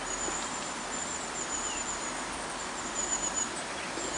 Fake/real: real